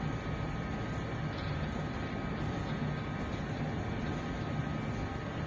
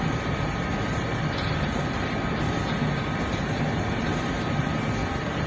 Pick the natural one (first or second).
first